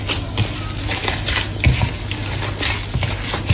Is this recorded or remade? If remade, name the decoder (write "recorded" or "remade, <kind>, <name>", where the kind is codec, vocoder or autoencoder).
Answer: recorded